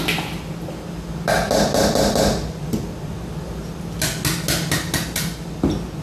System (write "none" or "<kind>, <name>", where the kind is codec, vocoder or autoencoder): none